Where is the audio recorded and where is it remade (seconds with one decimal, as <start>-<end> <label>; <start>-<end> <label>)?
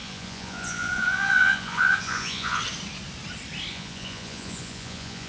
0.0-2.6 remade; 2.6-3.7 recorded; 3.7-5.3 remade